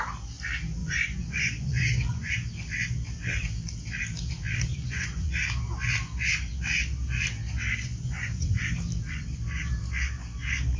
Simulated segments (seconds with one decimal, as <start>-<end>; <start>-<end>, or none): 0.8-2.3; 4.7-5.3; 7.8-8.6

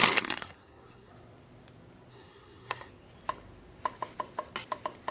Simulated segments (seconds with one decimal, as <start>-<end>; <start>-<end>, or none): 0.0-1.1; 2.1-2.9

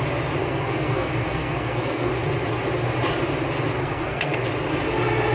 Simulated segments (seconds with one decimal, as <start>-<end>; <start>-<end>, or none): 0.4-2.1; 3.8-4.5

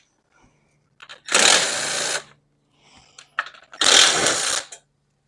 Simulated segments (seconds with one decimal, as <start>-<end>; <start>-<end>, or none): none

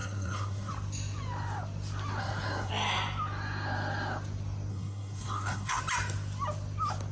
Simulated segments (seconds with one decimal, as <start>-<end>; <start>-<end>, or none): 0.0-0.7; 2.2-2.7; 4.7-5.8

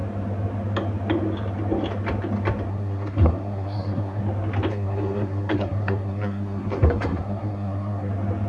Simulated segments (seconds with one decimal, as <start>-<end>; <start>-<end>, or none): 2.7-4.2; 4.7-8.1

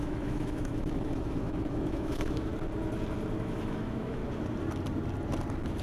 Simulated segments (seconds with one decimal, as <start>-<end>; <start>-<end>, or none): 0.0-2.5; 3.4-4.2

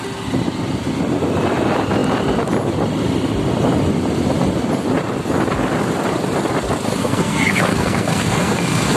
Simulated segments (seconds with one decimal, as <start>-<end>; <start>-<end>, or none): 7.0-9.0